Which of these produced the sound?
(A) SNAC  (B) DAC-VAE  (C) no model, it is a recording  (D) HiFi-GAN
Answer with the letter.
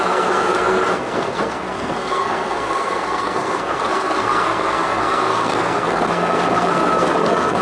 A